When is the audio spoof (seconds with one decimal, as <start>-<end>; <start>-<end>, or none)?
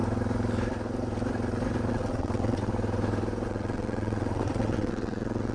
1.9-2.7; 3.5-5.5